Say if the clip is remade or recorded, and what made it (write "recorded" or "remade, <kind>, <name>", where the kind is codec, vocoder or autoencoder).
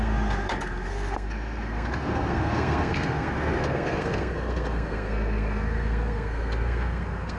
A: remade, codec, SNAC